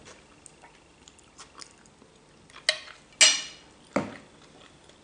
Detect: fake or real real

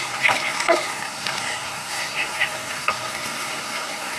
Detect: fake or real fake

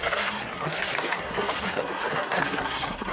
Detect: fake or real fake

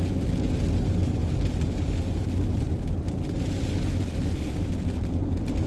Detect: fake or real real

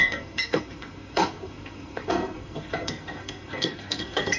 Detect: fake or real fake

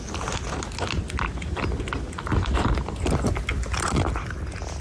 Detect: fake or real real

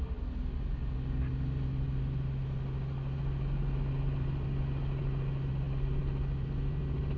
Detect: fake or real real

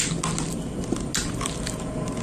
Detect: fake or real real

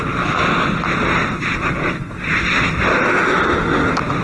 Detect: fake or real real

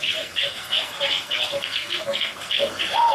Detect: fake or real fake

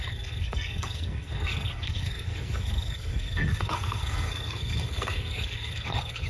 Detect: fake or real fake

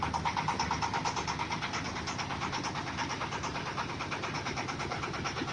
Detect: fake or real real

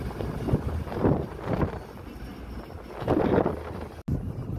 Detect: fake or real real